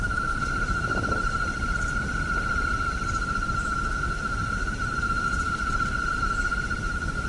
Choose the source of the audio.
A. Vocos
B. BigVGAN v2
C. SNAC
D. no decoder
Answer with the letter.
B